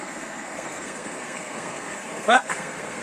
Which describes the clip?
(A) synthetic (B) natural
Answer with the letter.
A